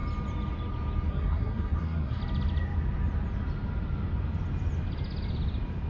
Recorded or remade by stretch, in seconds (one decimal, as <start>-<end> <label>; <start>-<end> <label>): 0.0-1.1 recorded; 1.1-2.2 remade; 2.2-5.9 recorded